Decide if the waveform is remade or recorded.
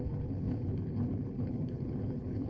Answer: remade